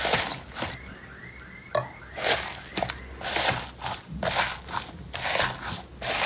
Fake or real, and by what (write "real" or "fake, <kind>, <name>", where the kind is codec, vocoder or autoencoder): real